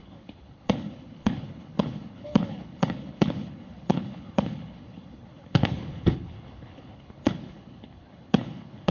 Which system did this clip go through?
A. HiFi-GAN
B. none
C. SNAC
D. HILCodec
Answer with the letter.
D